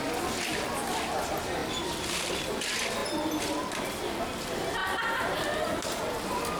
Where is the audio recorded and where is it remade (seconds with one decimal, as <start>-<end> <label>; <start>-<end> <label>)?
0.0-6.6 recorded